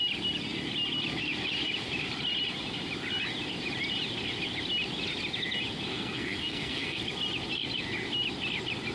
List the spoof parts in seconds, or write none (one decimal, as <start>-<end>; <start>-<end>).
5.9-7.0